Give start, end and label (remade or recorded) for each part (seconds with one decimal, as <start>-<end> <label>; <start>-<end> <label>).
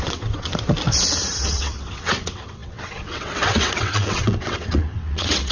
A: 0.0-0.5 remade; 0.5-1.3 recorded; 1.3-5.5 remade